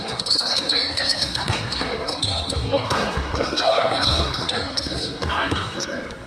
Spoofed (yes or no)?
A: yes